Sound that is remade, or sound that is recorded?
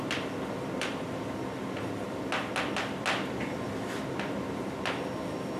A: recorded